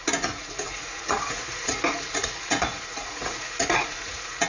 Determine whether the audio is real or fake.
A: fake